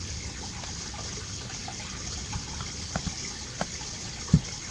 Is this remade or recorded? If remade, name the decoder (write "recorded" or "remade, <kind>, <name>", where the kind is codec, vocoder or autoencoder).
recorded